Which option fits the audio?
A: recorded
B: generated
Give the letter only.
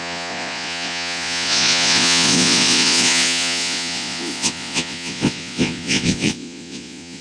B